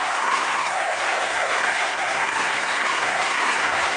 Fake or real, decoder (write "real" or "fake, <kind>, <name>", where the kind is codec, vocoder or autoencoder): fake, codec, SNAC